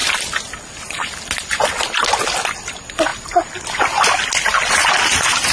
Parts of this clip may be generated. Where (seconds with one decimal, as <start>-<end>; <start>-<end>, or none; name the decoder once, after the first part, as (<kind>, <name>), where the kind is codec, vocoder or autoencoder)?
none